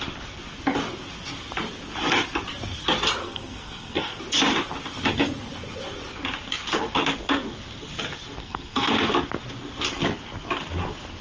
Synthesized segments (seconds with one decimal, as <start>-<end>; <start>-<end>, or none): 3.2-4.2; 8.4-8.9